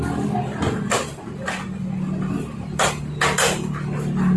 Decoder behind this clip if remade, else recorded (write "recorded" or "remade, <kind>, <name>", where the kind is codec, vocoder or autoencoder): recorded